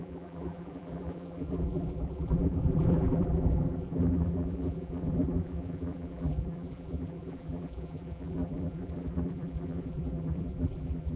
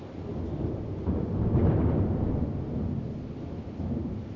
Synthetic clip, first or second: first